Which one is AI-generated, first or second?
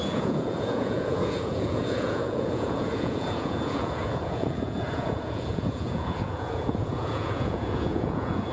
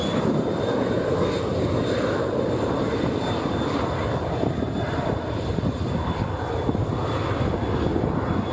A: first